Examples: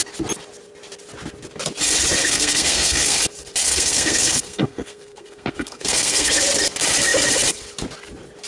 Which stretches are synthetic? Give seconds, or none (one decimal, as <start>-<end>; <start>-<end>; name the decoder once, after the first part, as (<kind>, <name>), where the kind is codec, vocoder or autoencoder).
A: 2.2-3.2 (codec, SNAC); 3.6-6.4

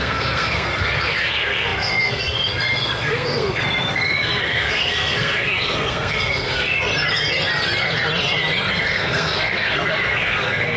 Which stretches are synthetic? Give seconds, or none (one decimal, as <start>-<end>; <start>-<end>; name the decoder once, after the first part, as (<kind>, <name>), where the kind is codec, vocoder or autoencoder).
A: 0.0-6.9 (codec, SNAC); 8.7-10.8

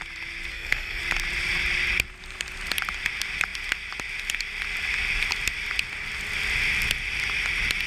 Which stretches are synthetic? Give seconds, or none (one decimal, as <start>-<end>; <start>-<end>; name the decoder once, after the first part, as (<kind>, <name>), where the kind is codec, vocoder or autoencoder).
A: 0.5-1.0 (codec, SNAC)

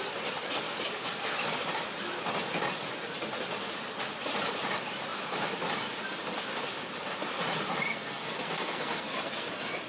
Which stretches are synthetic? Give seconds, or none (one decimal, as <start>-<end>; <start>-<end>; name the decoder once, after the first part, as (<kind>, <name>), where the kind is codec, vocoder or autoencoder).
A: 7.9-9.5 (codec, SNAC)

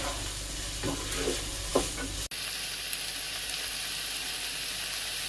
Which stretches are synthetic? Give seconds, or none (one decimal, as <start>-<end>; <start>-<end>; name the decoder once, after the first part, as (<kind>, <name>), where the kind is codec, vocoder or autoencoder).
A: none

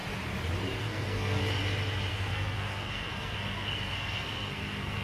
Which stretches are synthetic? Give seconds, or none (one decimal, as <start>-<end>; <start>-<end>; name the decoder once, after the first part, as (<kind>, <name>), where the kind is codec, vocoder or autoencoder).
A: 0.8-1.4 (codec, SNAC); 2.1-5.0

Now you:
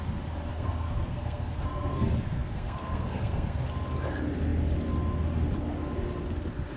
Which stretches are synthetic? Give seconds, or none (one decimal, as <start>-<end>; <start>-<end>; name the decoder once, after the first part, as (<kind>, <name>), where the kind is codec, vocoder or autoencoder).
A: 0.5-3.6 (codec, SNAC)